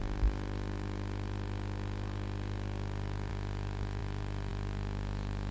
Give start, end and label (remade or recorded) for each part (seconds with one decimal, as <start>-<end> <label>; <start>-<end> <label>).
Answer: 0.0-5.5 recorded